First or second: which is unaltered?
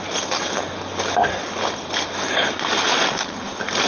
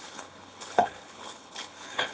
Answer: first